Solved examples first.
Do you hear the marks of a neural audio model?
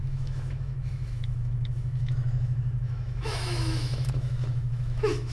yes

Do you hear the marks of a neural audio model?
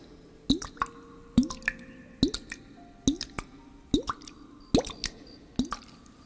no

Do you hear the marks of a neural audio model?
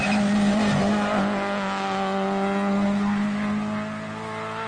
no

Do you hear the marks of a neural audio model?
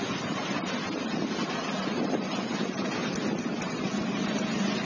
no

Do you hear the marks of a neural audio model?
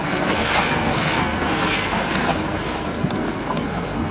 yes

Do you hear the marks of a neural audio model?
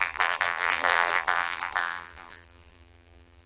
yes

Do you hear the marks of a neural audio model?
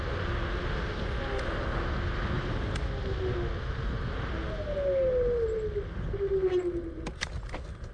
no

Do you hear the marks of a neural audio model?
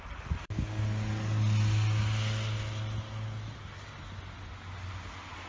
no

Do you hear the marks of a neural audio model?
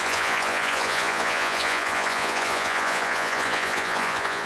yes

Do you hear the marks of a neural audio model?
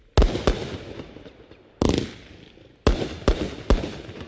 no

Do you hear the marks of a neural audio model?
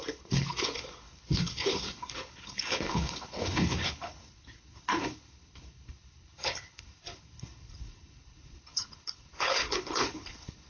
yes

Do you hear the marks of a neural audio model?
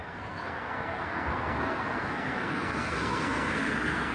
yes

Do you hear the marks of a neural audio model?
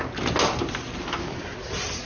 no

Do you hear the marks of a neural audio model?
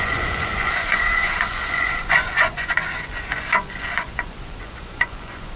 yes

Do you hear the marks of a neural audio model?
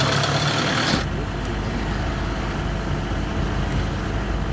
no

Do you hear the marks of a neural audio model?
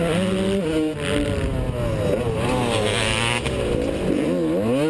no